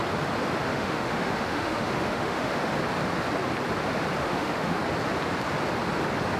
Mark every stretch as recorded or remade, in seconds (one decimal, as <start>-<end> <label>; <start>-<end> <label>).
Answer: 0.0-0.7 recorded; 0.7-2.7 remade; 2.7-4.2 recorded; 4.2-4.8 remade; 4.8-6.4 recorded